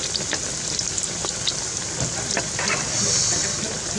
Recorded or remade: recorded